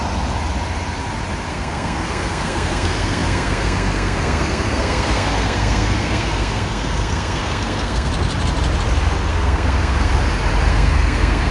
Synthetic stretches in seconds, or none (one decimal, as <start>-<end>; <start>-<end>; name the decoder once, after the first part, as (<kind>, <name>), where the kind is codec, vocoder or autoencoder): 1.5-8.1 (codec, SNAC); 9.3-10.1; 10.7-11.5